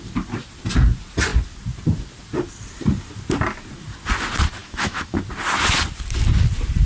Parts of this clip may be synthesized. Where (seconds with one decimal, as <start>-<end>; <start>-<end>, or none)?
4.6-5.2